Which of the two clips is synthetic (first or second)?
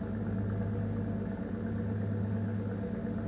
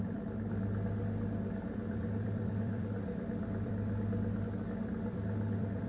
second